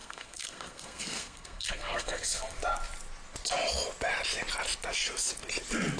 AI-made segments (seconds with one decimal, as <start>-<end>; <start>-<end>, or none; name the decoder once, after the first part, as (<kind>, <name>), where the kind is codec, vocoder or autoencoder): 0.0-2.6 (codec, SNAC)